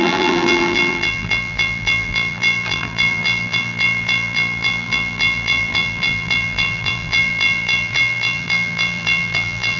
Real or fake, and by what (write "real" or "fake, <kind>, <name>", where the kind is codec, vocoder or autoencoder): fake, vocoder, BigVGAN v2